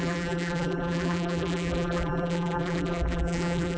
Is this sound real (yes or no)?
no